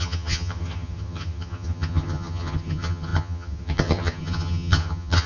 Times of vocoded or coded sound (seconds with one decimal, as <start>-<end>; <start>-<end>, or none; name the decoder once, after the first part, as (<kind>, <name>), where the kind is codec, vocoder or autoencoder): 0.0-5.3 (vocoder, HiFi-GAN)